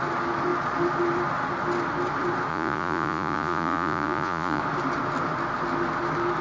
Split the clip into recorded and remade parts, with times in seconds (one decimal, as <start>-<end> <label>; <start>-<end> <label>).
0.0-2.5 recorded; 2.5-4.6 remade; 4.6-6.4 recorded